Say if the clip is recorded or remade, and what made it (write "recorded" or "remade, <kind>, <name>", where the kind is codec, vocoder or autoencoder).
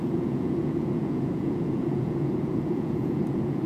remade, vocoder, Vocos